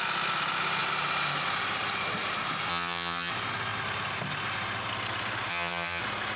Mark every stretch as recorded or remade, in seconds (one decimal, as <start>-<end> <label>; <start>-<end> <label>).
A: 0.0-2.7 recorded; 2.7-3.3 remade; 3.3-5.5 recorded; 5.5-6.0 remade; 6.0-6.4 recorded